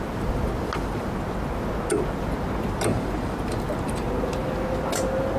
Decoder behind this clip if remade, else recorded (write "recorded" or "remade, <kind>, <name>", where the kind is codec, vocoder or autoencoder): recorded